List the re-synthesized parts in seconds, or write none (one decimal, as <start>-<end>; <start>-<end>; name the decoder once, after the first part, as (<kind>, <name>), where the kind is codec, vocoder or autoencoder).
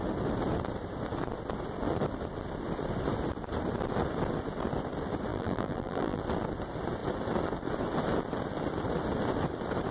5.3-6.2 (vocoder, BigVGAN v2)